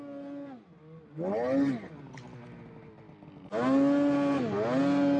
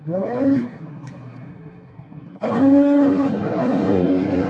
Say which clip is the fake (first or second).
second